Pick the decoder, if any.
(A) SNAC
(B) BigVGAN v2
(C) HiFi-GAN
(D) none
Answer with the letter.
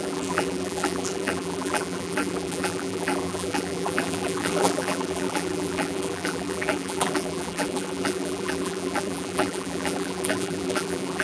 B